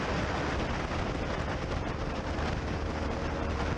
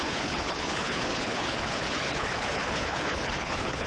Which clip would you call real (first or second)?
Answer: first